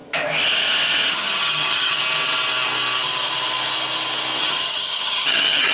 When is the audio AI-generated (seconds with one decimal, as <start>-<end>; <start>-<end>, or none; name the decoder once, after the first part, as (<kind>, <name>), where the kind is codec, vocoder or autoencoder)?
1.1-2.0 (vocoder, HiFi-GAN); 4.4-5.7